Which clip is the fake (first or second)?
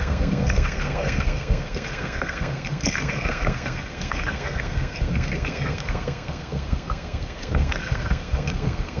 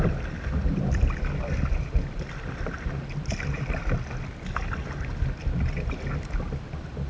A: first